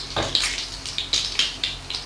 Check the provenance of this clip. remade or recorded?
recorded